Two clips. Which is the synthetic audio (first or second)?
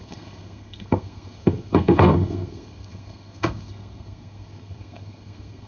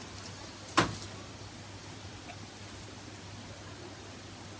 first